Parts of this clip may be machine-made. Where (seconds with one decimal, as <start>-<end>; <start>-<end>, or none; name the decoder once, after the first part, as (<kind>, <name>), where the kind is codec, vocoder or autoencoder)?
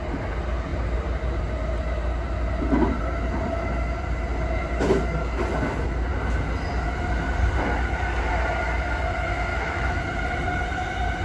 9.5-10.0 (autoencoder, DAC-VAE)